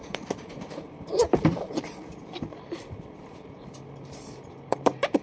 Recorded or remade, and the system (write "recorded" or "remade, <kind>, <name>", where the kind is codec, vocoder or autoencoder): remade, vocoder, BigVGAN v2